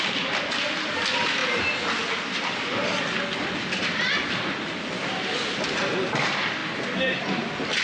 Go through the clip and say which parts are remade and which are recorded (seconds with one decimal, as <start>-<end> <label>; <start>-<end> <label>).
0.0-7.8 recorded